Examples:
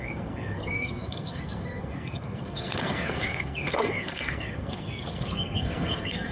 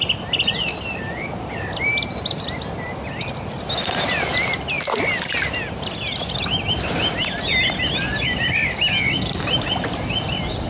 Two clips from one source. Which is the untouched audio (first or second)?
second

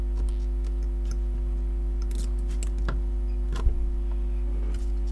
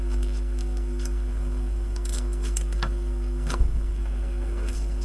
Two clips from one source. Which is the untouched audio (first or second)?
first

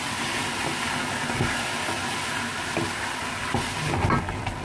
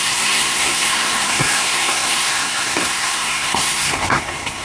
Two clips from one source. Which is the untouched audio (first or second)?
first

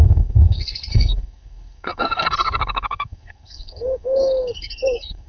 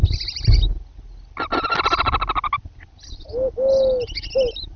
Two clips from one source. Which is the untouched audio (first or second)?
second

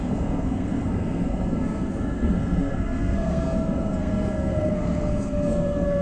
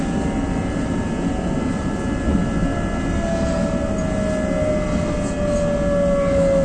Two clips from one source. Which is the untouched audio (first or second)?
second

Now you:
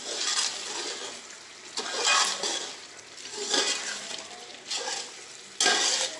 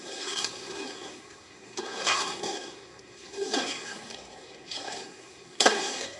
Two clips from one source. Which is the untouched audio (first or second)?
first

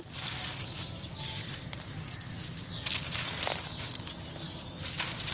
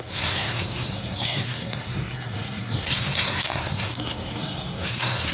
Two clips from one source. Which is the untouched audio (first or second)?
first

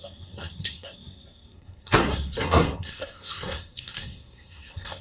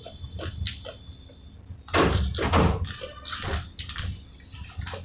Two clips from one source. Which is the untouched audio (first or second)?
second